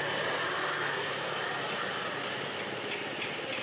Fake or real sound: real